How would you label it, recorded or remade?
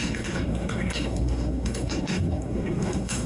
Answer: remade